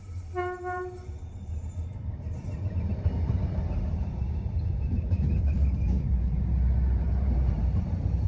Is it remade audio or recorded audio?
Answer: remade